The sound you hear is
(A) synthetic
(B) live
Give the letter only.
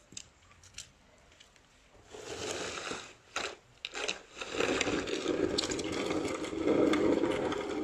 B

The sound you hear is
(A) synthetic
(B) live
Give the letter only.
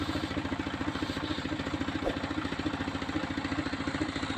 B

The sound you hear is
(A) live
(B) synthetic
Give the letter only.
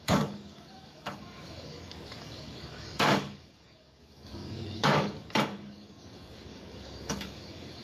B